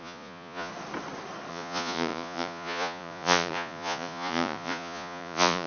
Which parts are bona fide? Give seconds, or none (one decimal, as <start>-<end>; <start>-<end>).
0.7-1.5